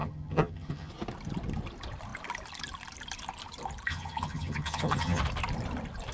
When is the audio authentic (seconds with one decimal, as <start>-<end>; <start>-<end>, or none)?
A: 0.9-3.9; 5.2-6.1

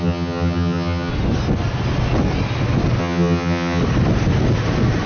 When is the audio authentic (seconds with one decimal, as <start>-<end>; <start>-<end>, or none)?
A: 1.1-3.0; 3.8-5.1